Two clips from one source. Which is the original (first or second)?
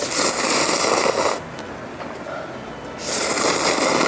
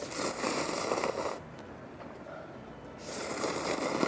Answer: first